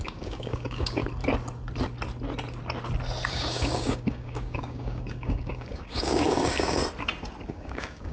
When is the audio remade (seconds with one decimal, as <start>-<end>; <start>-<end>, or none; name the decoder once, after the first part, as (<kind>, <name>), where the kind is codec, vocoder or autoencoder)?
0.0-1.0 (codec, DAC); 3.3-6.8; 7.5-8.1